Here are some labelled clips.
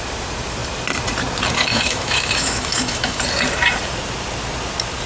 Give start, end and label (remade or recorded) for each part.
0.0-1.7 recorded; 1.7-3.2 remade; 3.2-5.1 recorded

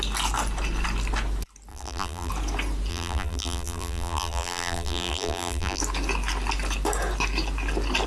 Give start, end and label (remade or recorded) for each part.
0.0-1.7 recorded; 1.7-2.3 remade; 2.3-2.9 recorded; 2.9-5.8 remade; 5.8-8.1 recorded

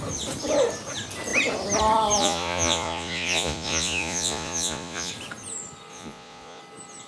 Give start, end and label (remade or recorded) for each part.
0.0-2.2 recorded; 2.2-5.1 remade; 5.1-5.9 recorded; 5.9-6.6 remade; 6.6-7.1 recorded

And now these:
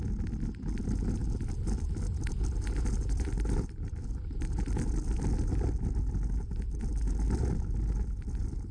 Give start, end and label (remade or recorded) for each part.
0.0-1.2 recorded; 1.2-6.1 remade; 6.1-8.7 recorded

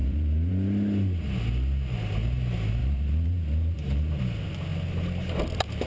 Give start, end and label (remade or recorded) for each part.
0.0-0.5 remade; 0.5-2.8 recorded; 2.8-4.2 remade; 4.2-5.9 recorded